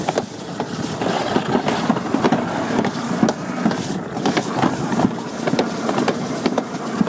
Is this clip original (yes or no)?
yes